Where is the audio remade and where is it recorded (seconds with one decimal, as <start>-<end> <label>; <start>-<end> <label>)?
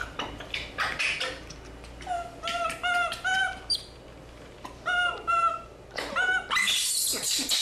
0.0-7.6 recorded